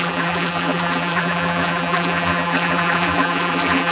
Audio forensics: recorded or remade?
remade